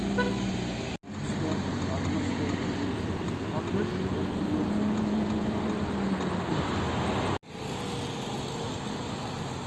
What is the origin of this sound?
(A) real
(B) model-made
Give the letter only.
A